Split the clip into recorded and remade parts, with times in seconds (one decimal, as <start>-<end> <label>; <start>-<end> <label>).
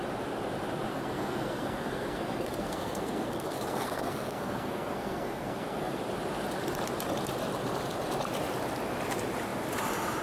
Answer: 0.0-0.9 recorded; 0.9-6.0 remade; 6.0-10.2 recorded